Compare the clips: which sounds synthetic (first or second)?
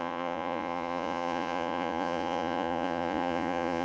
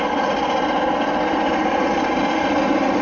first